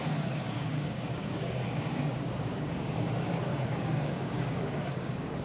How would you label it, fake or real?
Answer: fake